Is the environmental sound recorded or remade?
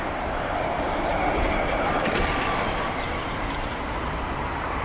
remade